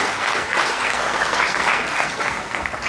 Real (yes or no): no